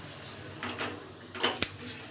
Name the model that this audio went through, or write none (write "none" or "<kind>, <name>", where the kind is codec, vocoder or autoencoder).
none